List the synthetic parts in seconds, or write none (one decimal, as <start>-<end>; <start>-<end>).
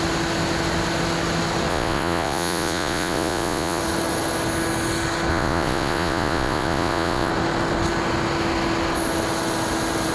1.7-3.8; 5.3-7.3